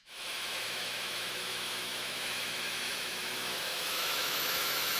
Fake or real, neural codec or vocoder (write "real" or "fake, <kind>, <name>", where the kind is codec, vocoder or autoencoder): fake, autoencoder, DAC-VAE